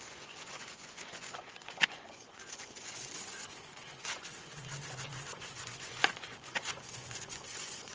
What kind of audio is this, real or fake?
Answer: fake